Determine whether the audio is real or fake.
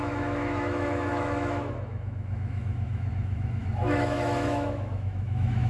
fake